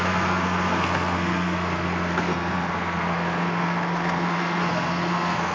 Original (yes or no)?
no